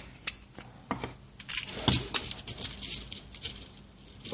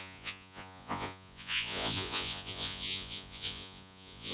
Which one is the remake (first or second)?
second